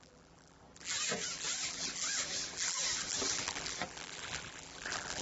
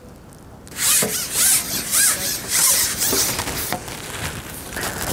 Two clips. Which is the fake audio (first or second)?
first